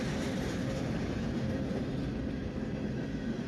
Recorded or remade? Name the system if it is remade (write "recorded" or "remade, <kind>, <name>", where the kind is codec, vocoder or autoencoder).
recorded